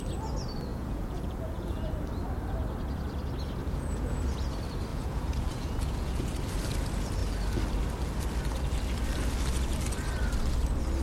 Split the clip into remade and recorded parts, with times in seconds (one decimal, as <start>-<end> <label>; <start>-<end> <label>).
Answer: 0.0-0.7 recorded; 0.7-1.9 remade; 1.9-3.6 recorded; 3.6-4.2 remade; 4.2-4.9 recorded; 4.9-6.3 remade; 6.3-11.0 recorded